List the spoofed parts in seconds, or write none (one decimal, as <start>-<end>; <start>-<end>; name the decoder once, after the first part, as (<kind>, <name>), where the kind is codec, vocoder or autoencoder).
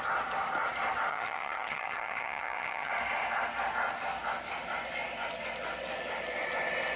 1.1-2.9 (vocoder, HiFi-GAN)